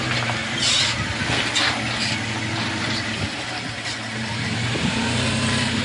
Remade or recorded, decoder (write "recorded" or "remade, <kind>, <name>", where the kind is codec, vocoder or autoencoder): recorded